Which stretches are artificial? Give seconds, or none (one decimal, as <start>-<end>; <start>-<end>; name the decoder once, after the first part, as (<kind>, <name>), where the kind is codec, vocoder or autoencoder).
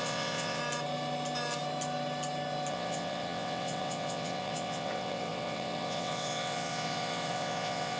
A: 0.0-0.6 (vocoder, WaveNeXt); 2.7-8.0